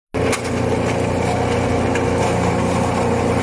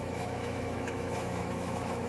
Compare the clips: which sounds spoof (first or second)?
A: second